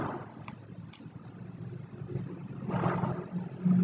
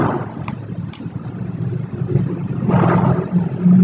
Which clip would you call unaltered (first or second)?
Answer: first